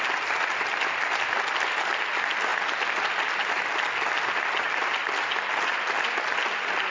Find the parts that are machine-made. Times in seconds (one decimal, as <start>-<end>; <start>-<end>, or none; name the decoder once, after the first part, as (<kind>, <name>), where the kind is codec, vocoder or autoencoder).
none